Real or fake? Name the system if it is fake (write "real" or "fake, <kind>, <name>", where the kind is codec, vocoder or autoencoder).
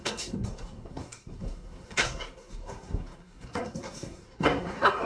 fake, codec, SNAC